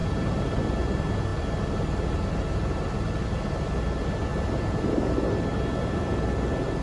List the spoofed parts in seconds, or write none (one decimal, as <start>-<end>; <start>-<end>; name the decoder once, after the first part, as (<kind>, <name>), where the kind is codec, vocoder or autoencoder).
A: 0.0-0.6 (vocoder, BigVGAN v2)